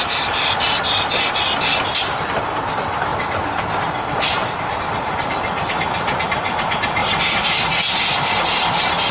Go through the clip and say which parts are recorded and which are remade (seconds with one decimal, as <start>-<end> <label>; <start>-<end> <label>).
0.0-9.1 recorded